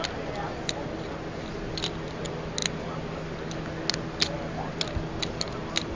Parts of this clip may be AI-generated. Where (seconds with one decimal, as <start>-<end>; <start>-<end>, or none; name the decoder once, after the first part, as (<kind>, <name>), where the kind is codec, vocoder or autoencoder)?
none